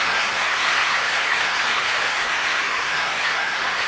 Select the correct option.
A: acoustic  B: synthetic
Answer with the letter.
B